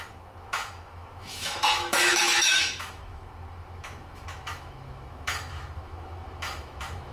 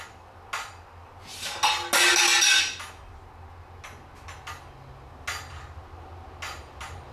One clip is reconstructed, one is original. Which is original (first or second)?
second